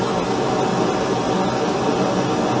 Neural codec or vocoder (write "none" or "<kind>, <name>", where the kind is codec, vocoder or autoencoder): none